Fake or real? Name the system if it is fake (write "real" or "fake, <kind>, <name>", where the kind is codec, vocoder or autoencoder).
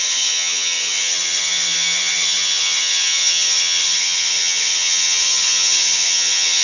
fake, vocoder, HiFi-GAN